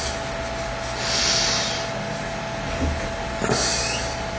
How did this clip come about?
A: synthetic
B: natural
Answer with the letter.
B